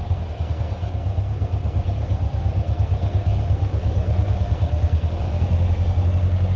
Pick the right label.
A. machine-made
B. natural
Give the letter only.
A